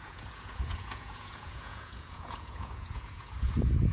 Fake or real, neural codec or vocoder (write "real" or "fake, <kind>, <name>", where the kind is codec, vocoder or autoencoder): fake, vocoder, Vocos